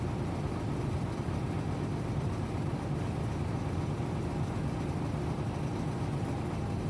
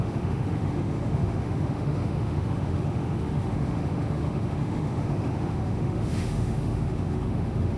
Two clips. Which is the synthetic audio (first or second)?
second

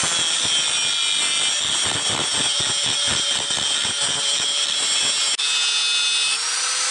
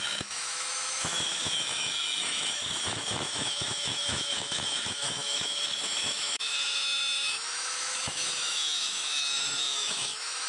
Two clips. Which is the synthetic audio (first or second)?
second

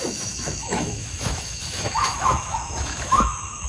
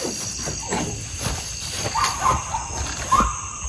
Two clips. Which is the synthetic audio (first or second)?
first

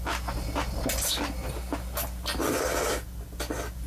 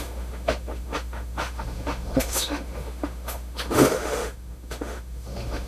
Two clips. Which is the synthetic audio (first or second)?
second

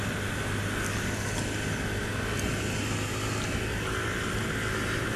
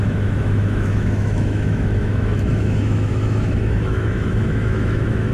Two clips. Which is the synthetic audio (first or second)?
second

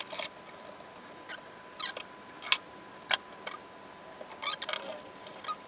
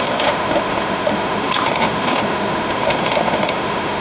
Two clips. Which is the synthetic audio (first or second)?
second